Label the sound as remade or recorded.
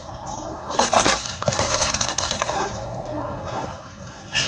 remade